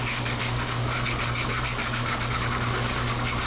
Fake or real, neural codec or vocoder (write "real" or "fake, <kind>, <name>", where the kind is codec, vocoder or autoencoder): fake, codec, DAC